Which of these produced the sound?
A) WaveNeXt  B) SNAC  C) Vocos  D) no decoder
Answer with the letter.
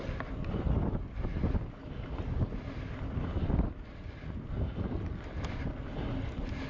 D